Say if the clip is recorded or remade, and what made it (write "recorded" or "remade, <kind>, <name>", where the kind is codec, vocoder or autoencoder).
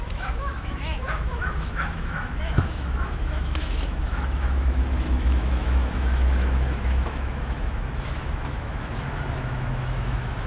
remade, autoencoder, DAC-VAE